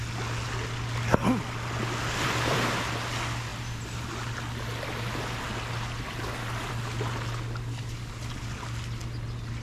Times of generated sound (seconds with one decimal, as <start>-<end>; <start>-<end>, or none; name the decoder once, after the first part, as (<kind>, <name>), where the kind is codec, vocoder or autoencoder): none